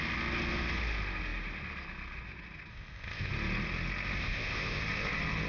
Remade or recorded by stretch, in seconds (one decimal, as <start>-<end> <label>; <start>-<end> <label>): 0.0-2.7 recorded; 2.7-3.3 remade; 3.3-4.2 recorded; 4.2-4.8 remade; 4.8-5.5 recorded